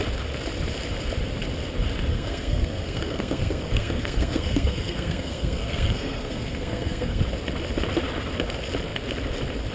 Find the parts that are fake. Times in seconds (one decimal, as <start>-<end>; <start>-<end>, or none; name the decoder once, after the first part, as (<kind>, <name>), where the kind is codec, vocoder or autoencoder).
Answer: 2.1-7.2 (codec, SNAC)